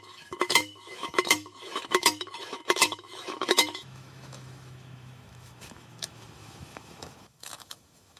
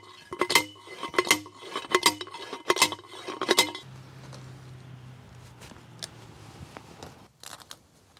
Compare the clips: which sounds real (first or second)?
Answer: second